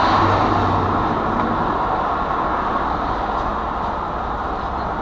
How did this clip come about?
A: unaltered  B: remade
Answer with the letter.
A